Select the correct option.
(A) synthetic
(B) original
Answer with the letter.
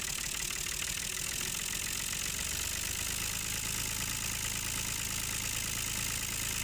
B